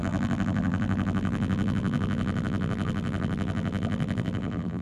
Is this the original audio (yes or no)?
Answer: no